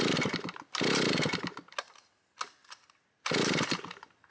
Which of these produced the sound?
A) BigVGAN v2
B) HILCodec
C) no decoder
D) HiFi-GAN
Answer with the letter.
C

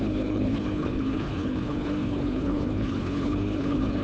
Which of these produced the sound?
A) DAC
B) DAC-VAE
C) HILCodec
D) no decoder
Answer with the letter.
C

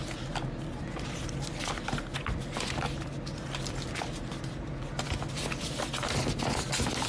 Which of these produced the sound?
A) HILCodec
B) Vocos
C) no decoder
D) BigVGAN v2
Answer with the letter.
C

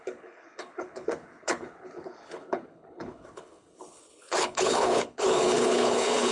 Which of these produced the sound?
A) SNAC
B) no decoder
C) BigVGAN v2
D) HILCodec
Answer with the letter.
D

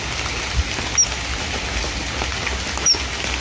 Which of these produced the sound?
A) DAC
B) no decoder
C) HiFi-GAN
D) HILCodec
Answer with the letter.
B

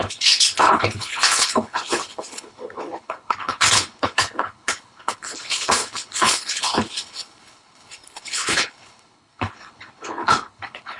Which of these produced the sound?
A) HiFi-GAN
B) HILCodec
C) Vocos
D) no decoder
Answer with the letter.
B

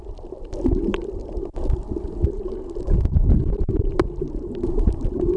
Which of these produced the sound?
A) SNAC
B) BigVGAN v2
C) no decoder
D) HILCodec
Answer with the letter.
C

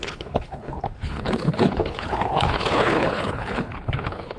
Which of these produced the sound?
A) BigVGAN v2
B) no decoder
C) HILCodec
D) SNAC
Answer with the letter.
C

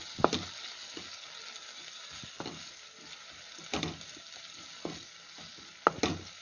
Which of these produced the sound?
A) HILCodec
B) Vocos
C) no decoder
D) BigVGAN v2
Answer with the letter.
C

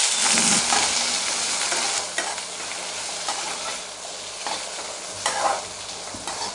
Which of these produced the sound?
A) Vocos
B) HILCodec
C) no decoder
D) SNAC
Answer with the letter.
C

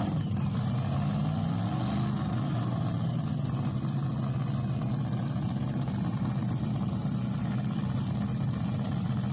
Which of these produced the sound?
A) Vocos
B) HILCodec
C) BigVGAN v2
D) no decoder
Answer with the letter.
D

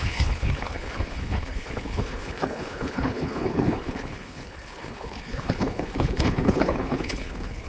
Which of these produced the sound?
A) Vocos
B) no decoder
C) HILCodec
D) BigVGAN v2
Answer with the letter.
C